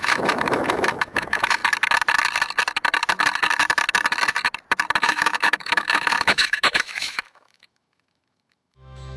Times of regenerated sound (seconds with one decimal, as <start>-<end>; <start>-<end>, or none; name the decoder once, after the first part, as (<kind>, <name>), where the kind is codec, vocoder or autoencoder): 0.0-1.6 (autoencoder, DAC-VAE); 5.0-9.2